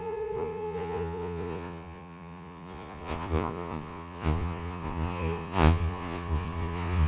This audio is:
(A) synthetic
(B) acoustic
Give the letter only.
A